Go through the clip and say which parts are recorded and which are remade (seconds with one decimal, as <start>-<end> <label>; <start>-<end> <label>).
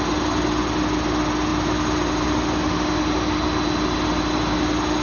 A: 0.0-5.0 recorded